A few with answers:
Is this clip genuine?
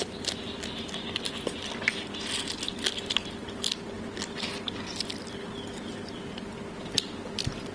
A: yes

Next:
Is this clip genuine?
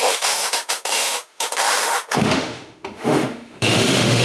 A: no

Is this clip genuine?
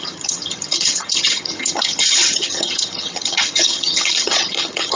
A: no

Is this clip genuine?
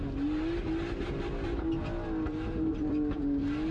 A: yes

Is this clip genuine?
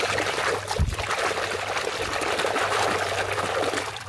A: yes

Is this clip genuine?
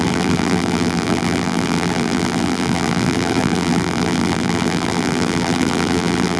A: no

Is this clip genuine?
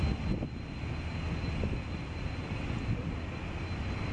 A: yes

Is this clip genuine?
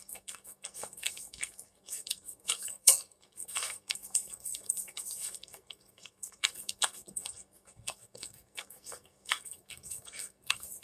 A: no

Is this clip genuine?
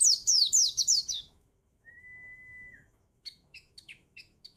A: no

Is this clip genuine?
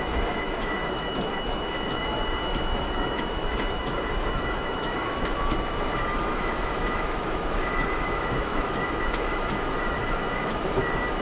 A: no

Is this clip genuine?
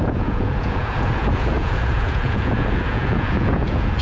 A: no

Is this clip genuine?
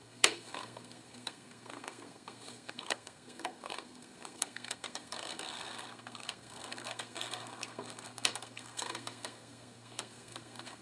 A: no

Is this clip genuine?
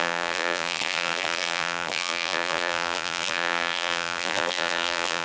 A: no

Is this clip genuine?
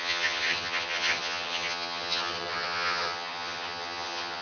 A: no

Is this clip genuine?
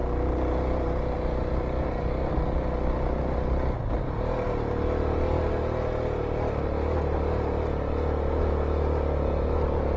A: yes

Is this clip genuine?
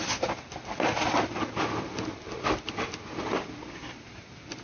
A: yes